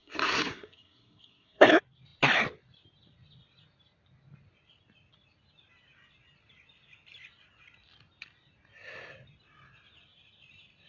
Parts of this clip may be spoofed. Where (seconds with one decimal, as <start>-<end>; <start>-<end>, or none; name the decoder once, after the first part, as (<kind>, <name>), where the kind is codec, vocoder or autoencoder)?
0.0-1.7 (codec, SNAC)